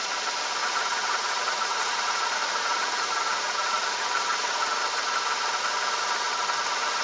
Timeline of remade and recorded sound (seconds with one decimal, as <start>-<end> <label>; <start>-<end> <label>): 0.0-0.6 recorded; 0.6-4.8 remade; 4.8-7.0 recorded